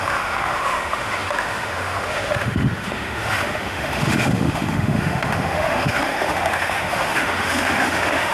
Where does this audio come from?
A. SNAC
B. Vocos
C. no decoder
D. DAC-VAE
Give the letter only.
D